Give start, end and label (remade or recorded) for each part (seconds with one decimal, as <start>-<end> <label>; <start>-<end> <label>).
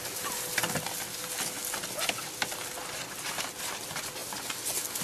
0.0-5.0 recorded